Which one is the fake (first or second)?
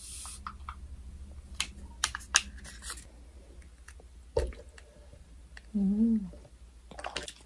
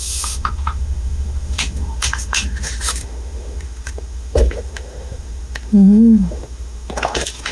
second